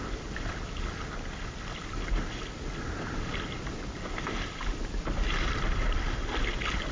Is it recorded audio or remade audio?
recorded